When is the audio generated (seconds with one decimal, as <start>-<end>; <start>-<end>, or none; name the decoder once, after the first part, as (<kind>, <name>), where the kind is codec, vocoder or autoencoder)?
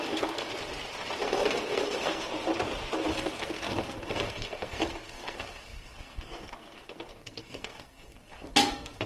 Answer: 0.0-0.5 (codec, SNAC); 1.2-2.3; 3.1-9.1